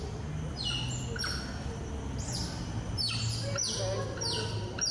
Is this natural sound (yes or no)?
yes